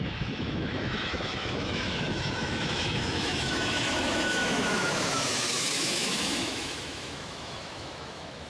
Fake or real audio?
fake